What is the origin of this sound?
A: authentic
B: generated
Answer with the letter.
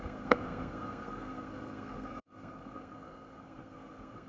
B